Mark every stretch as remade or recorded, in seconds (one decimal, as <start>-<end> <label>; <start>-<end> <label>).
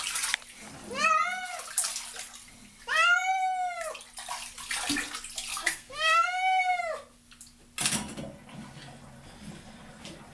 0.0-5.5 recorded; 5.5-6.8 remade; 6.8-10.3 recorded